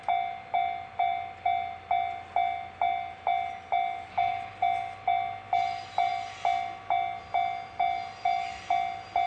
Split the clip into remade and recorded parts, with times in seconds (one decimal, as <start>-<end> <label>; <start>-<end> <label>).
0.0-9.3 recorded